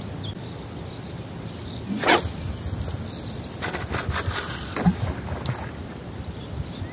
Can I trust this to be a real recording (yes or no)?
yes